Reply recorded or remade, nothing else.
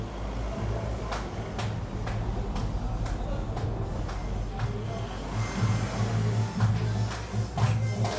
recorded